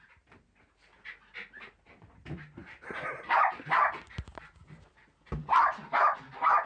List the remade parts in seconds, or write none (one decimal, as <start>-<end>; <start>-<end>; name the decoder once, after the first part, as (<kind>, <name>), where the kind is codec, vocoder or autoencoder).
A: none

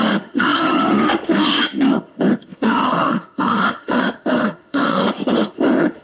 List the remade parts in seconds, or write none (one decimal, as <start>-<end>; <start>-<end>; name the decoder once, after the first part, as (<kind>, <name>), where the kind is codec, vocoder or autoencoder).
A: 0.0-6.0 (autoencoder, DAC-VAE)

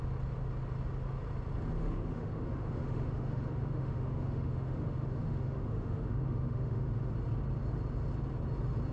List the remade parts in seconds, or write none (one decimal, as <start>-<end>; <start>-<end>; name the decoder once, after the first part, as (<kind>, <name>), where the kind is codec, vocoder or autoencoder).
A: 1.8-7.1 (autoencoder, DAC-VAE)

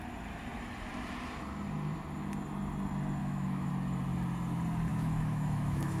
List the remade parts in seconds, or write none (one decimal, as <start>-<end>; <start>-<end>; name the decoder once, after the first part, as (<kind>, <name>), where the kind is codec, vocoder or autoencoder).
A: 3.2-3.7 (autoencoder, DAC-VAE); 4.9-6.0

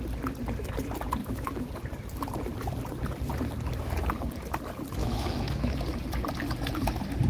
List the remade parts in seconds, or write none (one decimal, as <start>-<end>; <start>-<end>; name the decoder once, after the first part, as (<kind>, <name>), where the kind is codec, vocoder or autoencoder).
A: 1.2-1.7 (autoencoder, DAC-VAE); 5.0-5.7